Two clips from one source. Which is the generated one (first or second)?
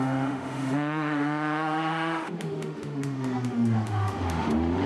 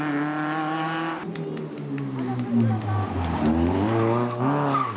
first